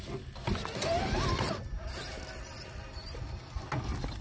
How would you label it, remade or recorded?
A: recorded